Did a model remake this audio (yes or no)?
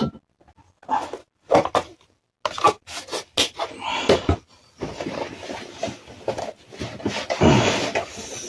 no